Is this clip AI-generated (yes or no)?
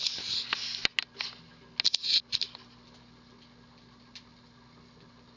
no